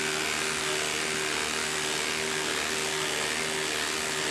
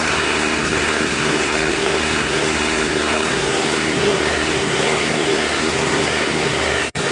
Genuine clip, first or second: first